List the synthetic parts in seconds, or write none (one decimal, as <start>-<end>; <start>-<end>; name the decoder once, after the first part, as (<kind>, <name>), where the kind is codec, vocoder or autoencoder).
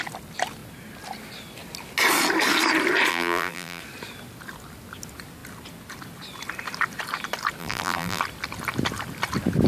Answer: 3.1-3.8 (vocoder, BigVGAN v2); 7.6-8.2